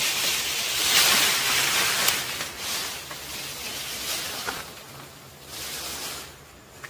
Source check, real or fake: real